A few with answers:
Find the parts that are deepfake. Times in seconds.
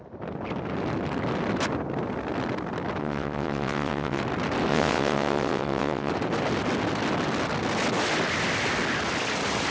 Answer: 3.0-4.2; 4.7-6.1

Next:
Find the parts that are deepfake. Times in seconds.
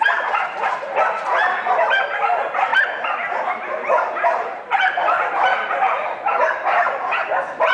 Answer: none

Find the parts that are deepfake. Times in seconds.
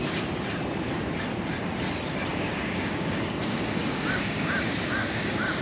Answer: 2.3-5.6